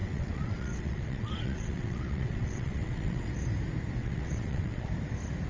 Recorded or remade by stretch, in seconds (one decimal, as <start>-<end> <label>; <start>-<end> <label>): 0.0-3.3 remade; 3.3-4.0 recorded; 4.0-4.9 remade; 4.9-5.5 recorded